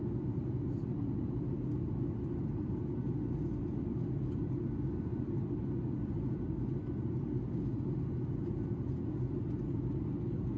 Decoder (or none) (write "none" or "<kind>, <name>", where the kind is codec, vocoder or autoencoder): none